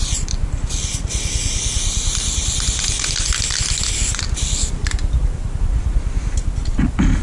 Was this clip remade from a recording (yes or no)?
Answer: no